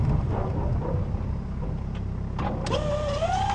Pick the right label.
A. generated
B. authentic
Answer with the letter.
B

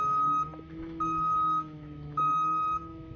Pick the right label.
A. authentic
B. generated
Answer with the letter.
B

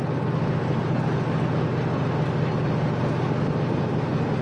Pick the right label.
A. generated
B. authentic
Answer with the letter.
B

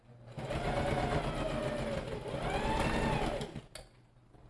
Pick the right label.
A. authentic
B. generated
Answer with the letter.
A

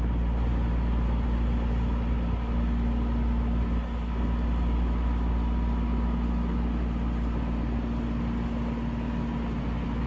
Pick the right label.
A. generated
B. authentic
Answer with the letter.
B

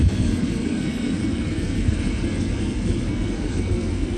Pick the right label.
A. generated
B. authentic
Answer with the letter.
A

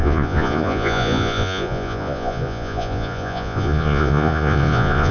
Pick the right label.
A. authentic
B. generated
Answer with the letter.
B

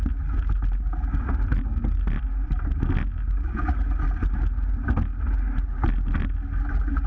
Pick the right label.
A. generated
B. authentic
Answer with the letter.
B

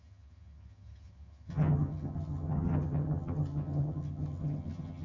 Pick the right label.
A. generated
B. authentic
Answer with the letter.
A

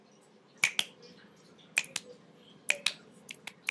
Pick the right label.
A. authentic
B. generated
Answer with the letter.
A